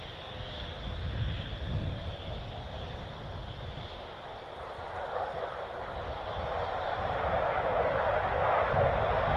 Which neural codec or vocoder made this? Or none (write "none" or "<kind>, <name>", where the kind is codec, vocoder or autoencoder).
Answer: none